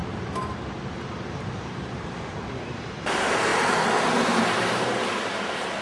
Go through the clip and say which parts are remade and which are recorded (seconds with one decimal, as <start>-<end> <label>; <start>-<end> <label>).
0.0-0.9 recorded; 0.9-3.5 remade; 3.5-4.2 recorded; 4.2-5.8 remade